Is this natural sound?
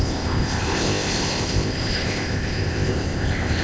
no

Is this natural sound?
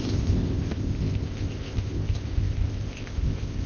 no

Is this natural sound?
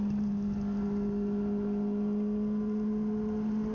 yes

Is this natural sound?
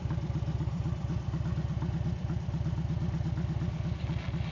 yes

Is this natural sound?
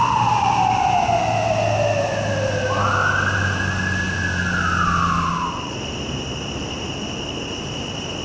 yes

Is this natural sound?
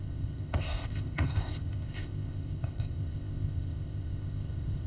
no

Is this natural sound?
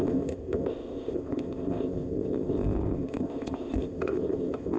no